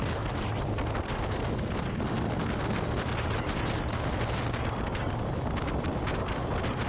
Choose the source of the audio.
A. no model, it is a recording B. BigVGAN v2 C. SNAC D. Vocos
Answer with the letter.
A